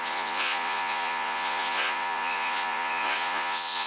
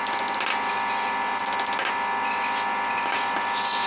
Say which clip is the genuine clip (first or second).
second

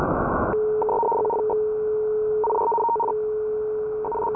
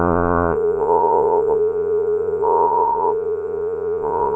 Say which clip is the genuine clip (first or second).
first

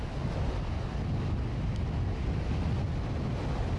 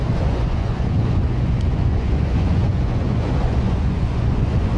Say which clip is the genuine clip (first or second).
first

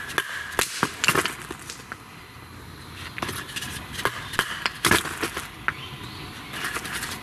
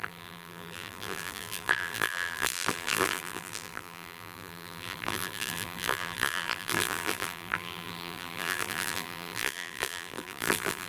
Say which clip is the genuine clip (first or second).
first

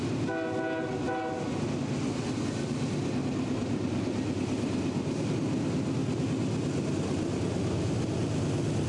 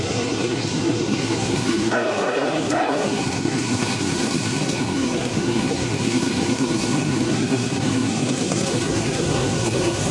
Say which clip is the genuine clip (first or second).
first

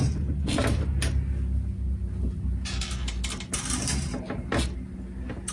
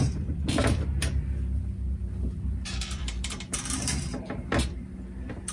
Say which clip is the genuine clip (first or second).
first